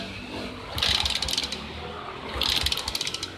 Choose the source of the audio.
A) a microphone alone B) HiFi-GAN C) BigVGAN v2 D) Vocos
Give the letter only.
A